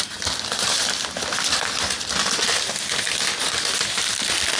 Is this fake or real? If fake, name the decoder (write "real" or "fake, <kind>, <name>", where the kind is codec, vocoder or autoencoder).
real